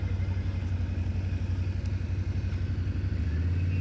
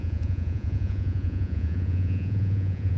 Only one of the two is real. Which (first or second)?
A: first